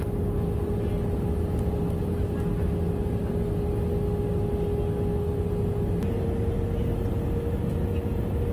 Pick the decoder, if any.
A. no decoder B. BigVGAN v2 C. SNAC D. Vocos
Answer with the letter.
A